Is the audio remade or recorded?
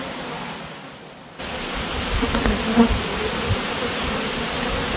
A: recorded